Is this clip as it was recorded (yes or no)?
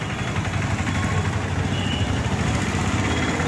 yes